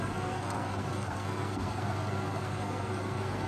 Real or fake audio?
fake